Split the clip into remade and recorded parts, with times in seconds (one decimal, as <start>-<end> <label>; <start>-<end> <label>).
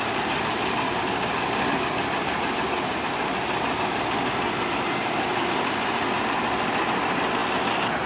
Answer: 0.0-8.1 recorded